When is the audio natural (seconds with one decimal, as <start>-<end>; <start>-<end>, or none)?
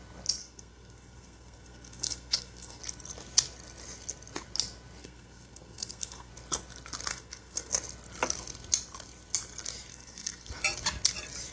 0.0-0.4; 2.8-5.0; 6.3-7.1; 7.7-9.9; 10.5-11.5